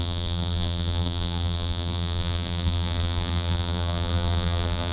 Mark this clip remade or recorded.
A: remade